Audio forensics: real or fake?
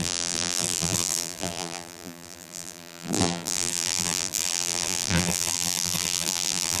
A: fake